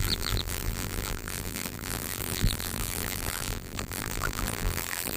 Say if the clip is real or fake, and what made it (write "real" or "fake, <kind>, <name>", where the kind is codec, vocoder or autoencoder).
fake, vocoder, BigVGAN v2